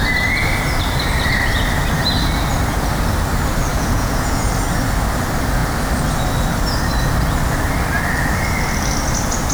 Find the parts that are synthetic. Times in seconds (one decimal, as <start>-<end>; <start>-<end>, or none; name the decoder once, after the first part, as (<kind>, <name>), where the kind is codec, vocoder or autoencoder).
3.7-4.5 (vocoder, Vocos)